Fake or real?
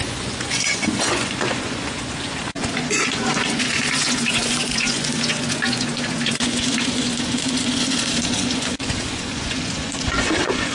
fake